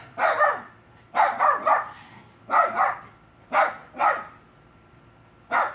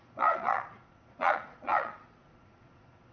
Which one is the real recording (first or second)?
first